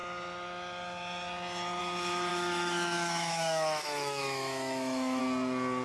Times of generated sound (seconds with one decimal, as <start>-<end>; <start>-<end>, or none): 2.3-5.2